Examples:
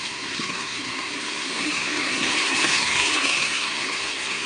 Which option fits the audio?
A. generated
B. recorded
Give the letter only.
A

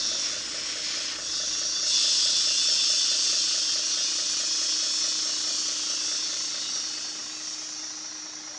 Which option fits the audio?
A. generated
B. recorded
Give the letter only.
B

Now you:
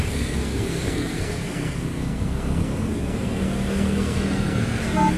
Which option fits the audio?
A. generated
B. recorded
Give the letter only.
A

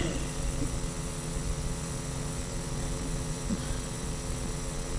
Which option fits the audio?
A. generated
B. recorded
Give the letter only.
A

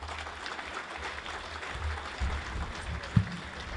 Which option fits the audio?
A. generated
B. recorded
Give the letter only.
B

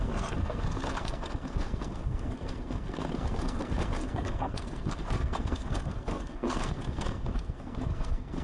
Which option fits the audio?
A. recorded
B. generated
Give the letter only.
B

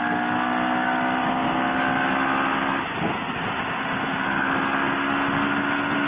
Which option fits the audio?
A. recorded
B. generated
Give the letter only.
A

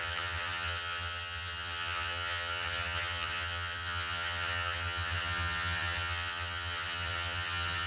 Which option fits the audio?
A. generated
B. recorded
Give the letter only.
A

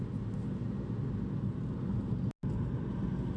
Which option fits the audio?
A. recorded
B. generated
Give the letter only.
A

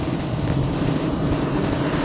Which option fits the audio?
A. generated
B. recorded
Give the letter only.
A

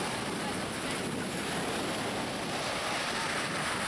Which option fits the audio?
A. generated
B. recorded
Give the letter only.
B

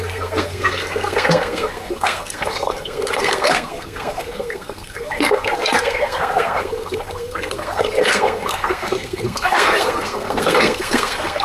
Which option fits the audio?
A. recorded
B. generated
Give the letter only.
B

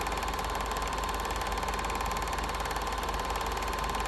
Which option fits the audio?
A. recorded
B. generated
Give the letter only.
A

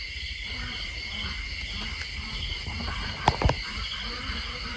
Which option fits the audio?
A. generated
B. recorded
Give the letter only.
A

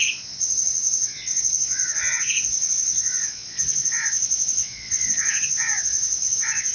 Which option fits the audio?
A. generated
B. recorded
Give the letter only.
A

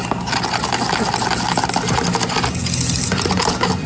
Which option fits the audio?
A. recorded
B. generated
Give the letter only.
A